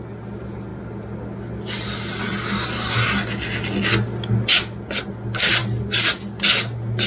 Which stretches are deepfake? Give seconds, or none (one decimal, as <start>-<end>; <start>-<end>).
none